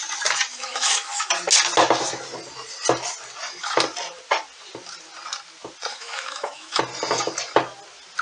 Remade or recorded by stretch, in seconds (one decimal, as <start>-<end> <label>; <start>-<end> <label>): 0.0-0.5 recorded; 0.5-1.3 remade; 1.3-5.9 recorded; 5.9-6.8 remade; 6.8-8.2 recorded